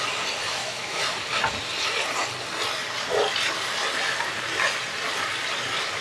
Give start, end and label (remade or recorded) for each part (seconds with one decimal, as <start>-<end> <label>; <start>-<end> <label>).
0.0-0.5 recorded; 0.5-1.0 remade; 1.0-6.0 recorded